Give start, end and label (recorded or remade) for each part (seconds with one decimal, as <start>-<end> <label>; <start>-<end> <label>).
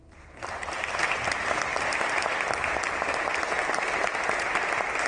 0.0-5.1 remade